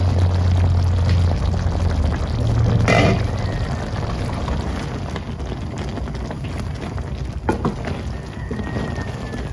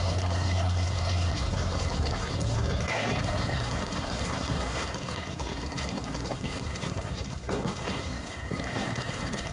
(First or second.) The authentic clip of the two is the first